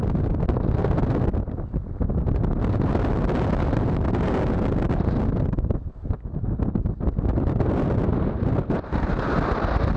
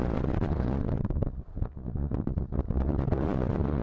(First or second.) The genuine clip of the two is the first